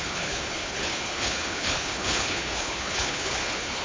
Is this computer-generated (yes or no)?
yes